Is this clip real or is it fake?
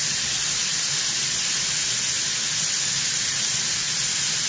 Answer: real